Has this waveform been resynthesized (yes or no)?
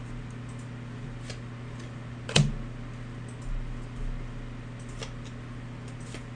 no